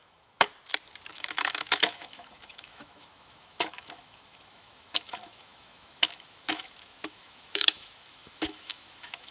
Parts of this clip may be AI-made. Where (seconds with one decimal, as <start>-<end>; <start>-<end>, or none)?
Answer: 0.0-0.5; 1.1-9.3